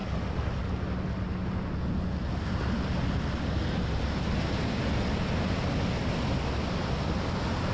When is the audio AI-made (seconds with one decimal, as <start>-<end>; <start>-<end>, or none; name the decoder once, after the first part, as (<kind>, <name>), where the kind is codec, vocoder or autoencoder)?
none